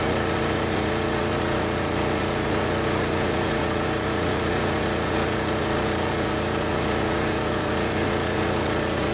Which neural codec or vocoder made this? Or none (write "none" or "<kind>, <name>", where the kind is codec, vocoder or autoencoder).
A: vocoder, Vocos